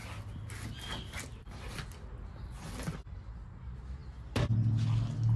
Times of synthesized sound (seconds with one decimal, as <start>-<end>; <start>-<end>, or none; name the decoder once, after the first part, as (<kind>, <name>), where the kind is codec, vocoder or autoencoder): 1.3-2.1 (vocoder, BigVGAN v2)